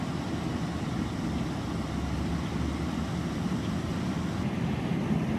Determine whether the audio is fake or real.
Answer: real